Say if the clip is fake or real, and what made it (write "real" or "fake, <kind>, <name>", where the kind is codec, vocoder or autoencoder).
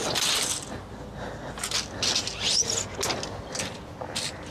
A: real